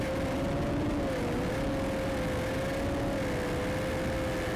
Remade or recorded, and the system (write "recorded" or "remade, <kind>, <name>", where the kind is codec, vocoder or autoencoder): recorded